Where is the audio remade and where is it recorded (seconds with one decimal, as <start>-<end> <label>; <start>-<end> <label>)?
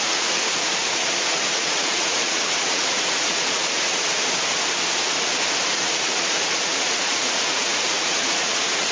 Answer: 0.0-4.1 remade; 4.1-5.7 recorded; 5.7-8.9 remade